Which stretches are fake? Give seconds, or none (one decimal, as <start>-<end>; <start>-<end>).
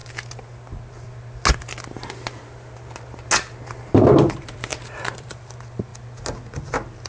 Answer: 4.3-5.9; 6.6-7.1